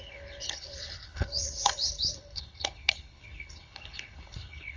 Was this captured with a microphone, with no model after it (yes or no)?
no